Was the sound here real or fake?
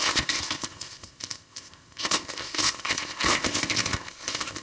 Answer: fake